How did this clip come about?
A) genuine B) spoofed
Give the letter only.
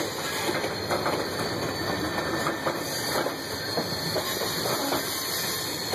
A